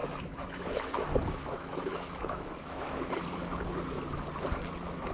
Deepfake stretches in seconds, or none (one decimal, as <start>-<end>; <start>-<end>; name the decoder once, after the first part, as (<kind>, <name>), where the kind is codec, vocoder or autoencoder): 0.0-3.1 (autoencoder, DAC-VAE)